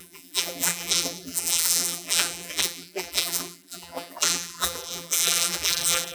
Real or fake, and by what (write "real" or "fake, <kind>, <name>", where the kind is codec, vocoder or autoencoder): fake, vocoder, BigVGAN v2